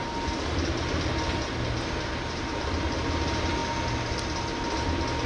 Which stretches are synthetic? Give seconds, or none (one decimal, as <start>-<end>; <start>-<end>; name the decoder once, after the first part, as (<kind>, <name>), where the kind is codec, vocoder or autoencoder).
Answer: none